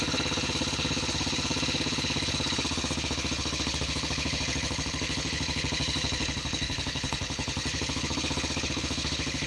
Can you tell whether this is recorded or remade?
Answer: remade